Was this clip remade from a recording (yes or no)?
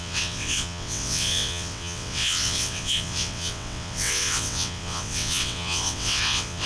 yes